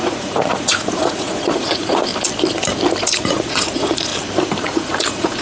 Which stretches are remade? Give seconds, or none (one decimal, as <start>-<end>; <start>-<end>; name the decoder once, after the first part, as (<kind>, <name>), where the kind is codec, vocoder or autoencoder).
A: 0.0-2.1 (vocoder, Vocos); 3.0-4.1; 4.6-5.4